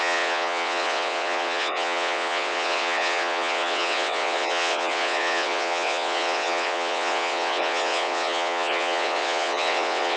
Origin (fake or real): fake